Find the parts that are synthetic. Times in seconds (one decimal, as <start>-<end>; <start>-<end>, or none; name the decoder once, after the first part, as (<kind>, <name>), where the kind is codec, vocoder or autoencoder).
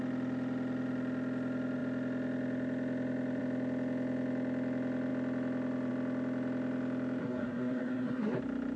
7.2-8.4 (codec, SNAC)